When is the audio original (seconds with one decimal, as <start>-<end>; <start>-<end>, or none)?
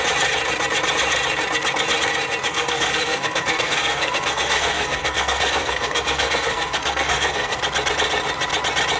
0.0-2.5; 7.6-9.0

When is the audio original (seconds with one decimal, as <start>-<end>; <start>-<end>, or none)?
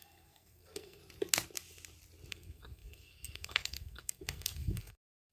1.0-2.3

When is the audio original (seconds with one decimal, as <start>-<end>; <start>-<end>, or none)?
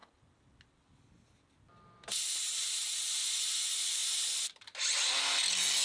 0.0-5.8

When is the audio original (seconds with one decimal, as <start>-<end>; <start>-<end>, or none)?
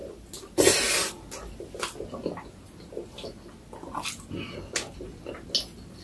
0.0-6.0